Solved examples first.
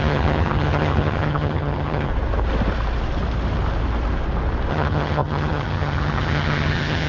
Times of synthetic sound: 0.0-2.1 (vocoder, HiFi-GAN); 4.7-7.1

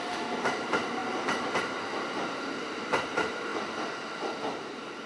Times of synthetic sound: 0.0-1.0 (vocoder, BigVGAN v2); 2.1-3.5; 4.3-5.1

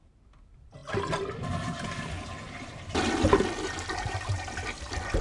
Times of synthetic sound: 0.0-5.2 (vocoder, BigVGAN v2)